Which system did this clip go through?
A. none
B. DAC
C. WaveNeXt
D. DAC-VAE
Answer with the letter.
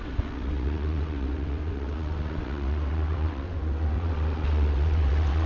C